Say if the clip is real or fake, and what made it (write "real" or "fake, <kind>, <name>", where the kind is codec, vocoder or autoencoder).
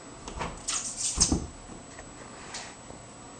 real